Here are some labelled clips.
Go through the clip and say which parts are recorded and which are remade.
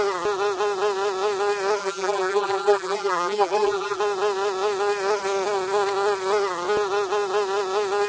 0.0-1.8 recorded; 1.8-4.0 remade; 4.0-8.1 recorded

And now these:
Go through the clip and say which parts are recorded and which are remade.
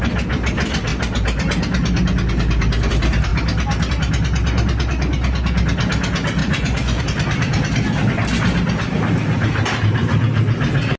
0.0-6.4 recorded; 6.4-7.0 remade; 7.0-11.0 recorded